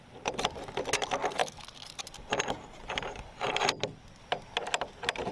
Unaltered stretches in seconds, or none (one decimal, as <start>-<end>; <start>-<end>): 0.0-1.4; 2.0-5.3